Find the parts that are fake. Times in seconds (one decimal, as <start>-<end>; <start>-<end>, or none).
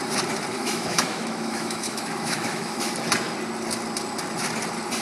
0.5-2.9